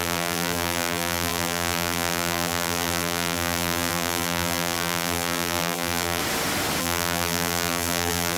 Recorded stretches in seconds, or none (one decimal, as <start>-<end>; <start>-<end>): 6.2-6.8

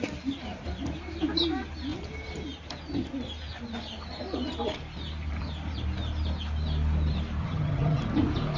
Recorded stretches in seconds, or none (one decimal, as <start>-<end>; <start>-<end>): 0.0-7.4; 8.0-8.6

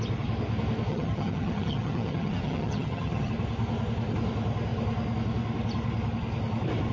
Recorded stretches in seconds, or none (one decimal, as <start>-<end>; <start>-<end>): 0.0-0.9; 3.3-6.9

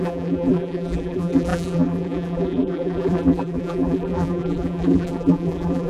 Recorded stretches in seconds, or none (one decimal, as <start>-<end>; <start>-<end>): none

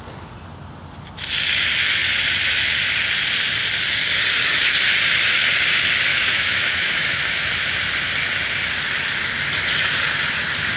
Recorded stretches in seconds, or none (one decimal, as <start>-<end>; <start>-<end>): 0.0-6.1; 7.2-10.8

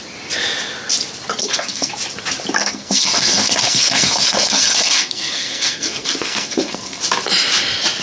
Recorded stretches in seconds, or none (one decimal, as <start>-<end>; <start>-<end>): 0.0-1.4; 1.9-2.6; 7.0-8.0

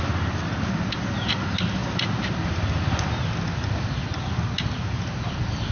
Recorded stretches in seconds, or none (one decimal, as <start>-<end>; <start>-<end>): 0.0-5.7

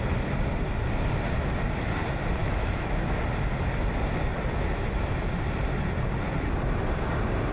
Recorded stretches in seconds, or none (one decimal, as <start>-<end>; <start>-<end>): 0.0-2.4; 3.2-7.5